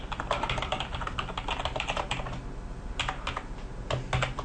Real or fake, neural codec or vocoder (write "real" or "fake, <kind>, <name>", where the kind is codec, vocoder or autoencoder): real